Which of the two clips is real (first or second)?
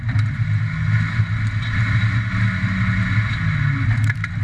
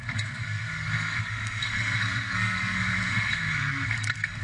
first